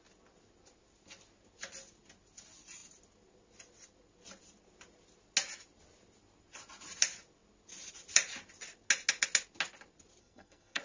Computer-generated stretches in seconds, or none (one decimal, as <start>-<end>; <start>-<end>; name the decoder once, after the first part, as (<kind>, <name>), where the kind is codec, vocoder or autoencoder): 10.2-10.8 (codec, SNAC)